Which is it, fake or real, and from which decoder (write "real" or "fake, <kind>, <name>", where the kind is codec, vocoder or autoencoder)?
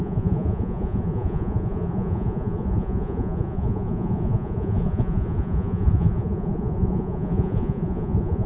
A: fake, vocoder, Vocos